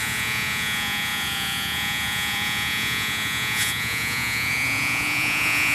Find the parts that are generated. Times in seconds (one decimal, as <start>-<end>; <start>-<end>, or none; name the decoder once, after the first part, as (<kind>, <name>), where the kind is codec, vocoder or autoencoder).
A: 0.0-5.7 (vocoder, Vocos)